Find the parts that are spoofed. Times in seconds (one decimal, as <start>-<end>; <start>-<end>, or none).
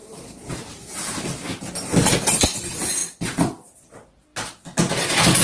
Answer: 0.0-1.7